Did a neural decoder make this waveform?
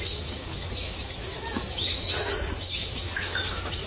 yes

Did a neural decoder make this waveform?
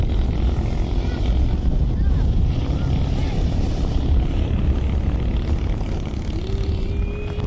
no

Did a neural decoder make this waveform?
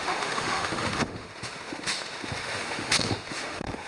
yes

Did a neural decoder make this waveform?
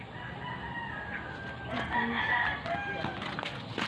no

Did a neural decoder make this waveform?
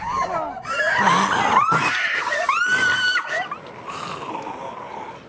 no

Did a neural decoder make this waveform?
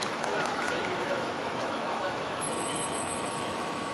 yes